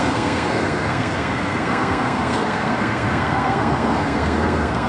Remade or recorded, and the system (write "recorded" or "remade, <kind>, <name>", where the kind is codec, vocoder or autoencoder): remade, codec, SNAC